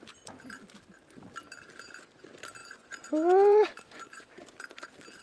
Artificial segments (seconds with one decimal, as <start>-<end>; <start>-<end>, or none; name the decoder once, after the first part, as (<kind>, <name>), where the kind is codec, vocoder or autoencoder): 2.6-4.3 (vocoder, Vocos)